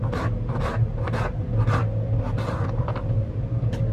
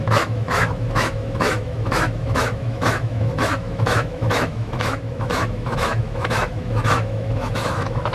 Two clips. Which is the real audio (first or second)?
first